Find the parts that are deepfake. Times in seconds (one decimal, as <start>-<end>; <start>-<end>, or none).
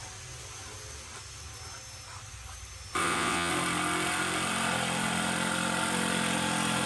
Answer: 3.0-3.5